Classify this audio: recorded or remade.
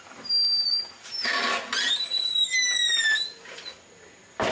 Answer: recorded